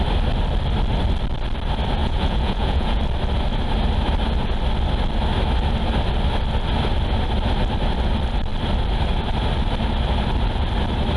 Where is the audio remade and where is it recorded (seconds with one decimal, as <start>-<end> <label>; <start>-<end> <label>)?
0.0-2.0 recorded; 2.0-3.0 remade; 3.0-11.2 recorded